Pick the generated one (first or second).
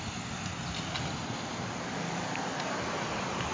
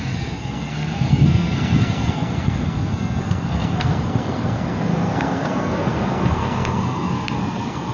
second